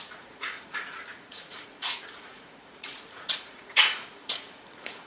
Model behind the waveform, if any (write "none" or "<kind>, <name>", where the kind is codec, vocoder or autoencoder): vocoder, Vocos